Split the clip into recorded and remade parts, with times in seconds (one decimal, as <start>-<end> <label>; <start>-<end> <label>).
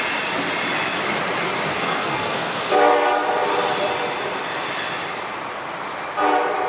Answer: 0.0-1.7 recorded; 1.7-2.6 remade; 2.6-6.7 recorded